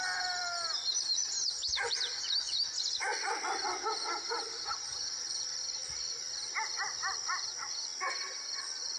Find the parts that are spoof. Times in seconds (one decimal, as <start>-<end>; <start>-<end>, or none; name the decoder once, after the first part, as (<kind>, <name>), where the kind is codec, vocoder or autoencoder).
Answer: 0.0-3.1 (vocoder, BigVGAN v2); 3.9-5.8; 7.2-7.9